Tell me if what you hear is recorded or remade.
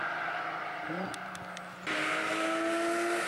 recorded